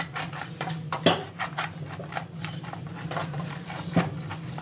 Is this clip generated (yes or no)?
no